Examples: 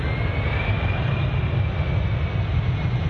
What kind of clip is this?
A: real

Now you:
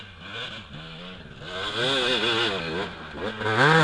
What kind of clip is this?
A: real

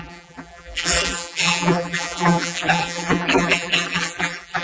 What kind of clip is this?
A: fake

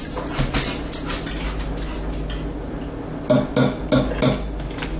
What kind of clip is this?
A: real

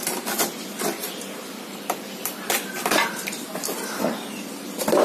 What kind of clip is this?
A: fake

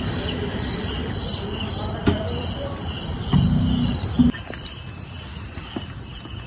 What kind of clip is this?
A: fake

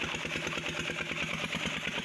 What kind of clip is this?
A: real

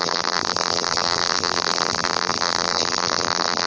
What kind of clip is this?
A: fake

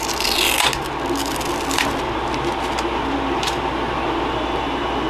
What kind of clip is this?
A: real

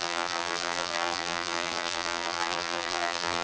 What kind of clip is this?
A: fake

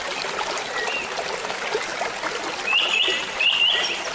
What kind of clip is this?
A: real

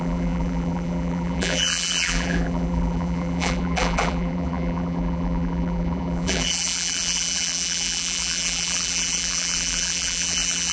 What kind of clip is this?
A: fake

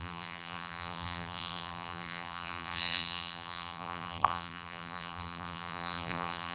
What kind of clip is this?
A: fake